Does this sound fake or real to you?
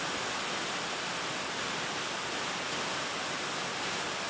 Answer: real